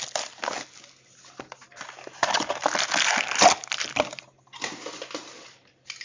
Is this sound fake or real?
real